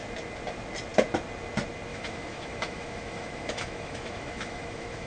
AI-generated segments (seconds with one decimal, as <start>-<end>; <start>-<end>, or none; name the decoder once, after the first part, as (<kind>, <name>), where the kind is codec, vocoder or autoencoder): 1.9-5.1 (autoencoder, DAC-VAE)